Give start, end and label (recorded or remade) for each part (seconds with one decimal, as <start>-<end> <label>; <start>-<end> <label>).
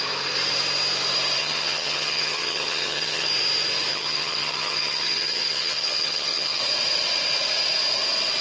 0.0-1.4 recorded; 1.4-3.3 remade; 3.3-3.9 recorded; 3.9-6.6 remade; 6.6-8.4 recorded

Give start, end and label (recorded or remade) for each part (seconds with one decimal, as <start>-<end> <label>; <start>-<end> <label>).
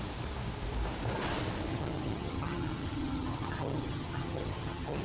0.0-1.7 recorded; 1.7-5.0 remade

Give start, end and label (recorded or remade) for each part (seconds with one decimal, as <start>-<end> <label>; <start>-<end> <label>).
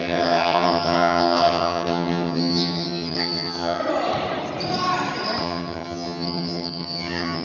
0.0-3.8 remade; 3.8-5.4 recorded; 5.4-7.4 remade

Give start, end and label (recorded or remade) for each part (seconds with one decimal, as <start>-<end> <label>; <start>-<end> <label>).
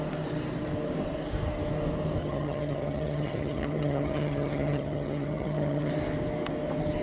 0.0-2.2 recorded; 2.2-5.9 remade; 5.9-7.0 recorded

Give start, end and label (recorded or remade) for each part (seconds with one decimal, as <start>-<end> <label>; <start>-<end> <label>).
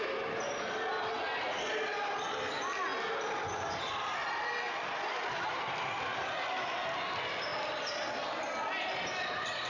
0.0-9.7 recorded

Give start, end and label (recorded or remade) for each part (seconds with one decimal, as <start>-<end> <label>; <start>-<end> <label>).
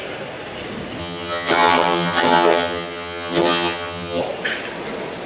0.0-1.0 recorded; 1.0-4.2 remade; 4.2-5.3 recorded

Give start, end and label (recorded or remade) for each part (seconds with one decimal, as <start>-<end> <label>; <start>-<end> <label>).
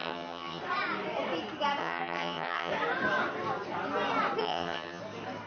0.0-0.6 remade; 0.6-1.8 recorded; 1.8-2.7 remade; 2.7-4.4 recorded; 4.4-5.0 remade; 5.0-5.5 recorded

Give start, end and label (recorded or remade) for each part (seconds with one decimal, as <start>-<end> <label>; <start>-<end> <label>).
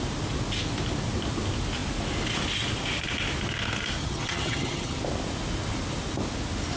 0.0-4.0 recorded; 4.0-5.0 remade; 5.0-6.8 recorded